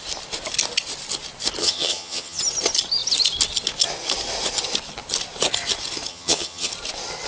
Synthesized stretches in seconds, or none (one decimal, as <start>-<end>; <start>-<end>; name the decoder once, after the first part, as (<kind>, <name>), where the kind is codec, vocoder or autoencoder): 1.6-2.4 (vocoder, HiFi-GAN); 6.1-6.7